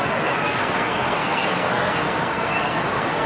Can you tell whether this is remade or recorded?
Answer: remade